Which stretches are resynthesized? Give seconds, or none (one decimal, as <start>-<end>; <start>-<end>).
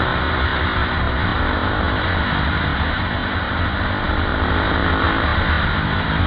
none